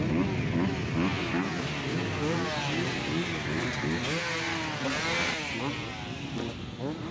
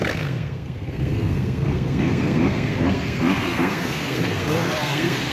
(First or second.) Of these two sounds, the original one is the first